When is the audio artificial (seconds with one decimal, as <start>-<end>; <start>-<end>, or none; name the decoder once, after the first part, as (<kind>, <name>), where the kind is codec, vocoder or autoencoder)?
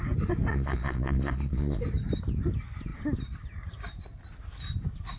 0.5-1.8 (vocoder, Vocos)